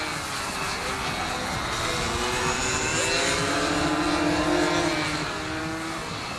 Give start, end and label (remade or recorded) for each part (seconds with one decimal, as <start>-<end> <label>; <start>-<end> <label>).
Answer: 0.0-6.4 recorded